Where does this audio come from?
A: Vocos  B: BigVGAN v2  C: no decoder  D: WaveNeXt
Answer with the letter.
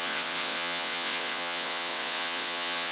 D